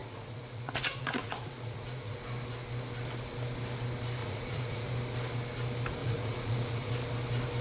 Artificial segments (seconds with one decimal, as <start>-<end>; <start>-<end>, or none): 0.0-2.2; 4.2-4.9; 6.0-6.9